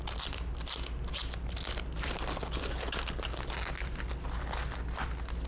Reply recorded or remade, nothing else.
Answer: recorded